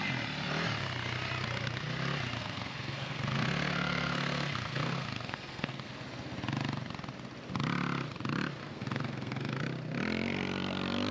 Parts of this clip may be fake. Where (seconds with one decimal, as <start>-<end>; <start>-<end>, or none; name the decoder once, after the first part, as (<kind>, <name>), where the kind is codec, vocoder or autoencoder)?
2.4-5.9 (codec, SNAC); 8.6-9.6